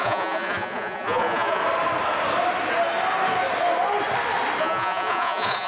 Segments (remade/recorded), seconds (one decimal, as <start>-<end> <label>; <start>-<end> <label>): 0.0-1.6 remade; 1.6-4.6 recorded; 4.6-5.7 remade